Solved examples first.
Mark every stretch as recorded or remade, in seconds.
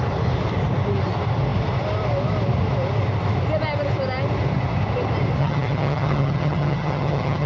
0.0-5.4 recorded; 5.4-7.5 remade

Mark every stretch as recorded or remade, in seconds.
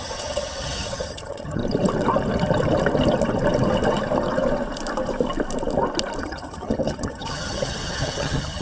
0.0-1.6 remade; 1.6-6.2 recorded; 6.2-8.6 remade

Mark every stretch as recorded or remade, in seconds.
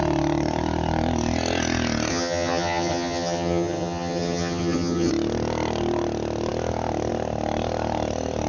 0.0-2.1 recorded; 2.1-5.1 remade; 5.1-8.5 recorded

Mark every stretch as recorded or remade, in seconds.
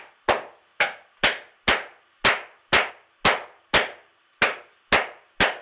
0.0-5.6 recorded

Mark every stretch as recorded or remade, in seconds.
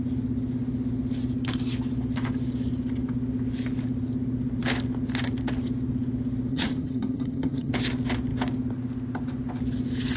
0.0-6.5 recorded; 6.5-7.7 remade; 7.7-10.2 recorded